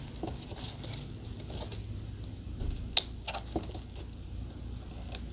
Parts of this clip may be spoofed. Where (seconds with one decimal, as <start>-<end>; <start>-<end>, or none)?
none